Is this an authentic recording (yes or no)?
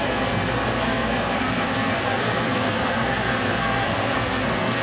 no